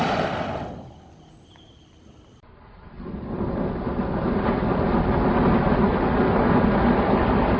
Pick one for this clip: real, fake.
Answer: real